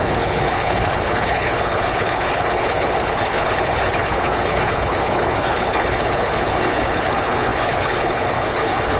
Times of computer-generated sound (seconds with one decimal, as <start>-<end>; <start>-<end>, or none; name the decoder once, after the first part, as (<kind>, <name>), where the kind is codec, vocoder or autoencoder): 0.0-9.0 (codec, HILCodec)